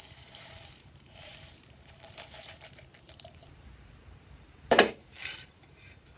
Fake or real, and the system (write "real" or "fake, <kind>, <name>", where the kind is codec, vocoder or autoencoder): fake, vocoder, BigVGAN v2